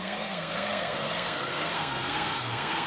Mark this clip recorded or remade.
remade